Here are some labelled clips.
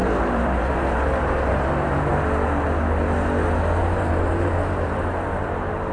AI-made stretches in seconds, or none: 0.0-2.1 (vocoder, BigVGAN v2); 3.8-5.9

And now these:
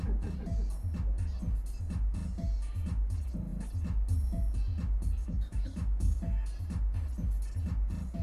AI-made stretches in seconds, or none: 5.2-6.2 (autoencoder, DAC-VAE)

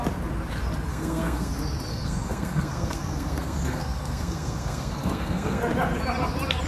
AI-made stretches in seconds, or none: 0.9-1.5 (codec, SNAC); 1.9-5.6